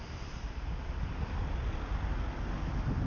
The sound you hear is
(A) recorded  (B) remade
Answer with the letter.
A